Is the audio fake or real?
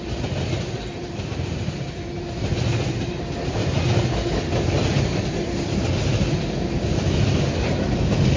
real